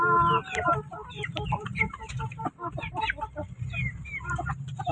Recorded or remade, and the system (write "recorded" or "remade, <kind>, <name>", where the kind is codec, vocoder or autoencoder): remade, vocoder, BigVGAN v2